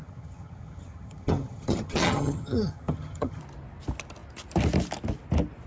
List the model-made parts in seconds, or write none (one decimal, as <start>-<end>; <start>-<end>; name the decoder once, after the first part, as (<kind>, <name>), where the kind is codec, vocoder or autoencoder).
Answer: 0.0-3.4 (vocoder, HiFi-GAN)